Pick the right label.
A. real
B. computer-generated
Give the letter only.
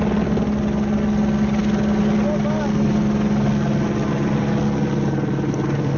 A